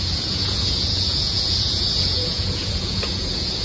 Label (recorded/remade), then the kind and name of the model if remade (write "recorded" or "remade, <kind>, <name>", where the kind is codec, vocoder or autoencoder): remade, vocoder, Vocos